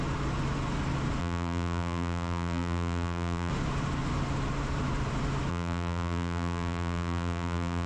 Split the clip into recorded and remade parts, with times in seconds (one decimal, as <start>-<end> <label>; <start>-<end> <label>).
0.0-1.2 recorded; 1.2-3.5 remade; 3.5-5.5 recorded; 5.5-7.9 remade